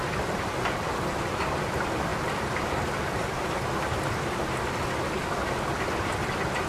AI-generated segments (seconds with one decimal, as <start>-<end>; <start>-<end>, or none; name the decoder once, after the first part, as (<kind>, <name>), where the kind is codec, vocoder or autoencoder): none